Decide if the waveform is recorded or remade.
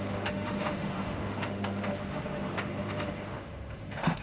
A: remade